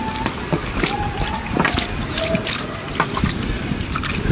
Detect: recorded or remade recorded